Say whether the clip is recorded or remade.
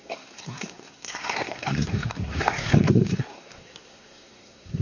remade